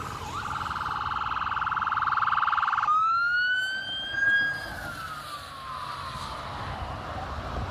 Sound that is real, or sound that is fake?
real